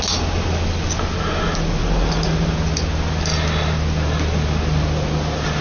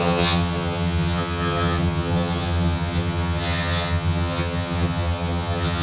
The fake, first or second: second